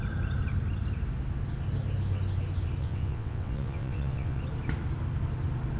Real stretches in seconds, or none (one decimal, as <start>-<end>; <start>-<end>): 0.0-2.8; 4.4-5.8